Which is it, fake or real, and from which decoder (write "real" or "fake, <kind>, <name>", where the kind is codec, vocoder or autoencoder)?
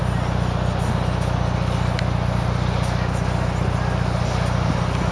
real